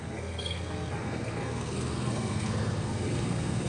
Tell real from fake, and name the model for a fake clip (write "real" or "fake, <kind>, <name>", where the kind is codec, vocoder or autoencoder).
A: fake, codec, SNAC